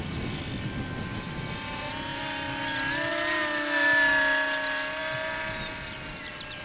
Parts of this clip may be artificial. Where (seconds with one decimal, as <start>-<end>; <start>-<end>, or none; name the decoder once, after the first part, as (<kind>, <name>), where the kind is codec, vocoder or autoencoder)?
none